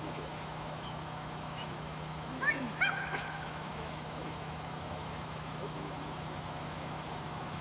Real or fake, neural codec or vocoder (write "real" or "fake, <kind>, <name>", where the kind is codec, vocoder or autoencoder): fake, autoencoder, DAC-VAE